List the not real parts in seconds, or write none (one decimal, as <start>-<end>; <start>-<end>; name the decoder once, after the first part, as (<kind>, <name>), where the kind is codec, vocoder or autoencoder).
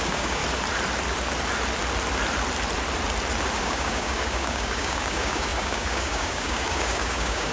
0.0-0.4 (codec, DAC); 3.6-7.5